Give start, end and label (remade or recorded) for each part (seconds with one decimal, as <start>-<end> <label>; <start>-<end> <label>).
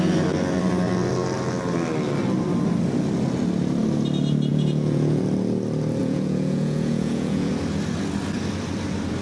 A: 0.0-4.5 recorded; 4.5-5.2 remade; 5.2-6.0 recorded; 6.0-7.5 remade; 7.5-9.2 recorded